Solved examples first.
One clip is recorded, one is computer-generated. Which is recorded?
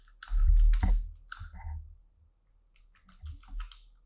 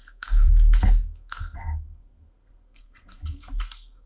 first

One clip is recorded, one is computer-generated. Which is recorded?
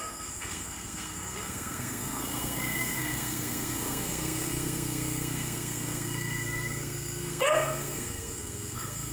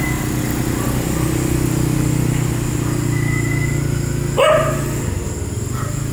second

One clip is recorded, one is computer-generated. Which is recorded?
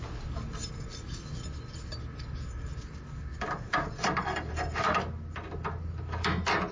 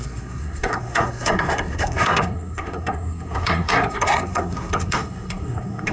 first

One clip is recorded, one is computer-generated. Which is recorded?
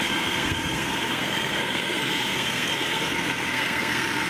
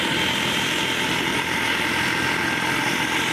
second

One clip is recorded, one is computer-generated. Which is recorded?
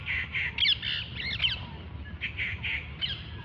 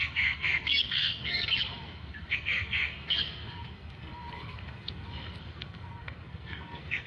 first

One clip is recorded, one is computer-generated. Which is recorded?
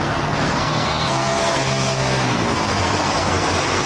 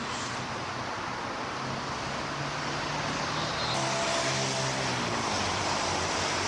second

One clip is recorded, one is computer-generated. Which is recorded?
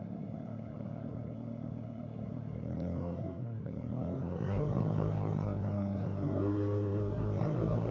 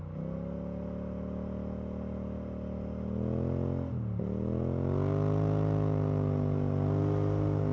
second